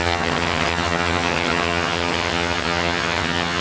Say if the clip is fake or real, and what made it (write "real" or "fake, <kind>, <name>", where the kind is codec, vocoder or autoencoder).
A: fake, vocoder, HiFi-GAN